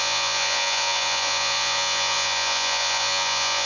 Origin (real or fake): fake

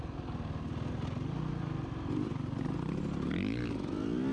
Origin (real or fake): real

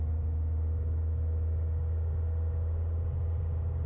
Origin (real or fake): real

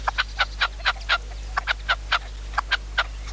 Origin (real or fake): real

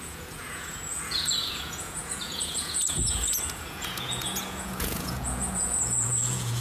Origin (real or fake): fake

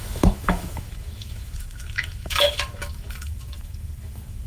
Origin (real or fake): fake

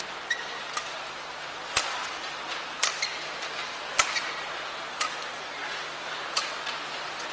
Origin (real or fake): real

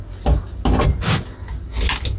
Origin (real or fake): real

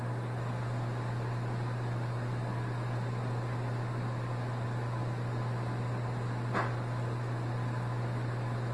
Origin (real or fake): real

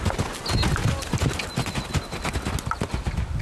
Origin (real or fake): real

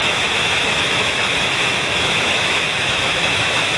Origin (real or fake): fake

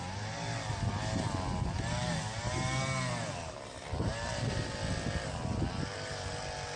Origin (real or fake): real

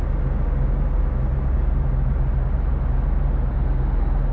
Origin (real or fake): real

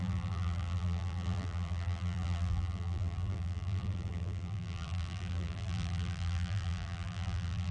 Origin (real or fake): fake